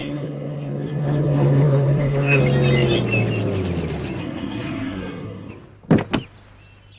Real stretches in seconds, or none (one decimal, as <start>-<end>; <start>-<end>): 2.4-4.2; 5.5-7.0